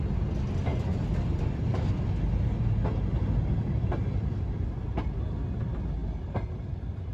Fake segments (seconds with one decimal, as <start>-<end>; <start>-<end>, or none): none